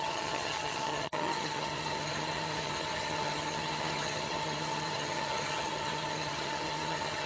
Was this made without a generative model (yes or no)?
no